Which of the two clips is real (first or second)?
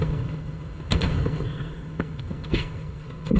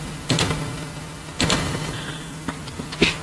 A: second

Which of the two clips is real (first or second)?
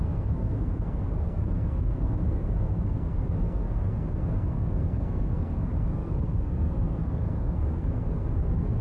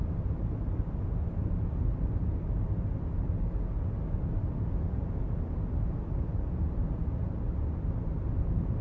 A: second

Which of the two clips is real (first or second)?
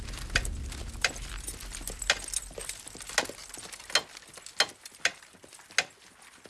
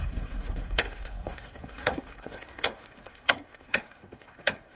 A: first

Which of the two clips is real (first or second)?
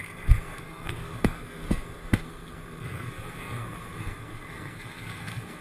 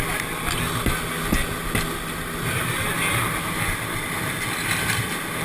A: second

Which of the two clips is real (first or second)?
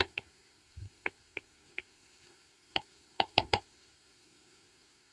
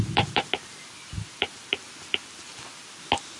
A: second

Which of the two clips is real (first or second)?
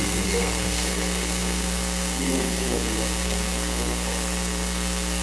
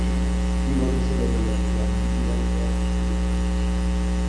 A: second